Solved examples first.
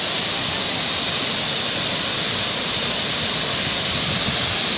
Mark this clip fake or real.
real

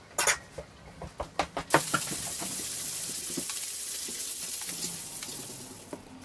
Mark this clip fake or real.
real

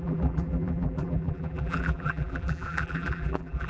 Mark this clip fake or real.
fake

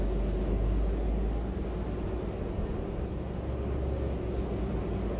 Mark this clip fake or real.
real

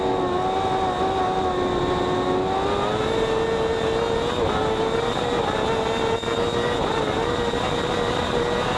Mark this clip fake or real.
real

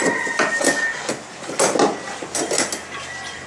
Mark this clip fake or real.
real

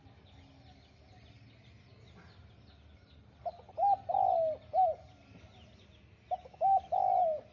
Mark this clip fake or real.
real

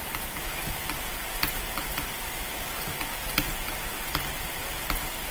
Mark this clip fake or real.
real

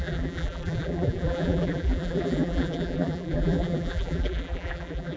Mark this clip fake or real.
fake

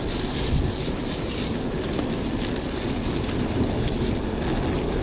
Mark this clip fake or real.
real